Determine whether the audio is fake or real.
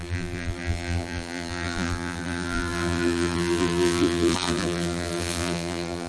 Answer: fake